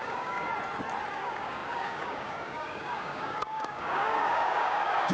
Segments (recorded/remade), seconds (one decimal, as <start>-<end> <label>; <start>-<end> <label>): 0.0-0.5 remade; 0.5-1.1 recorded; 1.1-5.1 remade